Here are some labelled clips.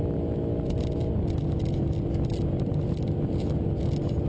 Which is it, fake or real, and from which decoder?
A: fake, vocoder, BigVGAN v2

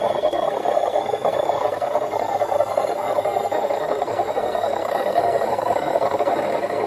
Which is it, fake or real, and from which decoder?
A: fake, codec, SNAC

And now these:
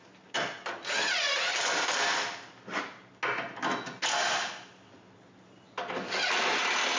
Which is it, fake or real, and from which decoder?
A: real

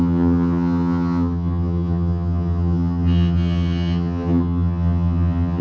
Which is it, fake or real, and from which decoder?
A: fake, vocoder, HiFi-GAN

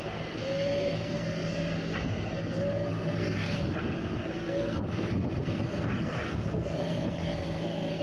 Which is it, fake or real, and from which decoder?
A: fake, codec, SNAC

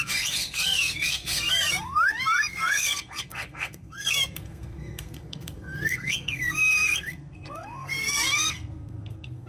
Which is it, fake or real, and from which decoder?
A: fake, codec, SNAC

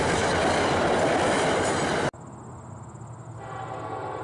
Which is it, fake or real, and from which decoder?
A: real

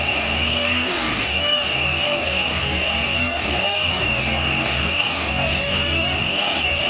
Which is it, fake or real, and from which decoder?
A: fake, codec, DAC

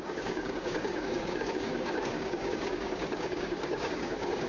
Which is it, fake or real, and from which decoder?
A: fake, codec, DAC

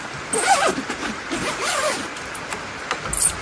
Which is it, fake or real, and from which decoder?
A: real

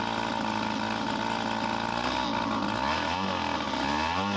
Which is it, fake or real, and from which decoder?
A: real